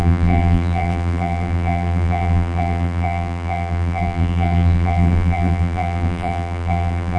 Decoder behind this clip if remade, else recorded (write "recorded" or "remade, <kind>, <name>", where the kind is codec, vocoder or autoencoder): remade, vocoder, BigVGAN v2